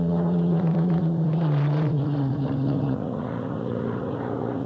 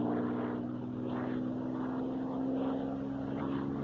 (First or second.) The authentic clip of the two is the second